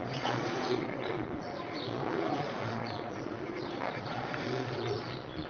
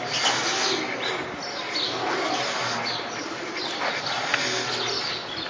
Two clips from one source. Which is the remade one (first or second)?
first